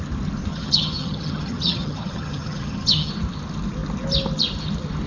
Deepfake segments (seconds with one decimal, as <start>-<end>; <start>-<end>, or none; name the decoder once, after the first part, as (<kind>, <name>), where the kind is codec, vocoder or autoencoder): 0.5-3.1 (vocoder, HiFi-GAN)